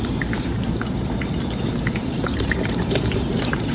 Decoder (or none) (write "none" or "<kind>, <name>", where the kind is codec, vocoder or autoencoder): vocoder, BigVGAN v2